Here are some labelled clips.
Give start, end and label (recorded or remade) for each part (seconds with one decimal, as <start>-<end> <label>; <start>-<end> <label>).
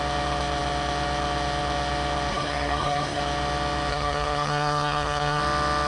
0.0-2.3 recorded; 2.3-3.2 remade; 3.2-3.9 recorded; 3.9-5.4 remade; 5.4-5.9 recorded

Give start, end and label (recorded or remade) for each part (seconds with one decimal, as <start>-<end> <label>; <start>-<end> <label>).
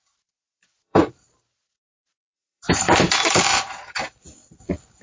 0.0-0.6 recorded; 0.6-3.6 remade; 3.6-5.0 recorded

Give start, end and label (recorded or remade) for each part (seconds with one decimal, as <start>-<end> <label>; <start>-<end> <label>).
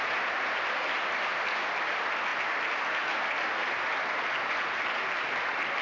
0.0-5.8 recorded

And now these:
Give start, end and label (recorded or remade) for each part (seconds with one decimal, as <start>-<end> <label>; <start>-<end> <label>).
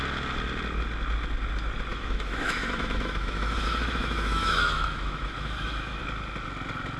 0.0-1.9 recorded; 1.9-6.0 remade; 6.0-7.0 recorded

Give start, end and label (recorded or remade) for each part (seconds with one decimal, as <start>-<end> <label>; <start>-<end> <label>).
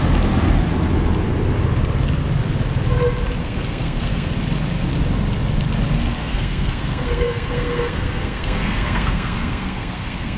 0.0-3.4 recorded; 3.4-4.3 remade; 4.3-6.2 recorded; 6.2-10.4 remade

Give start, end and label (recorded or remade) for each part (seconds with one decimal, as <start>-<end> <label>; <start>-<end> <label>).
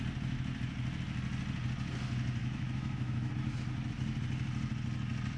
0.0-2.4 recorded; 2.4-3.3 remade; 3.3-5.4 recorded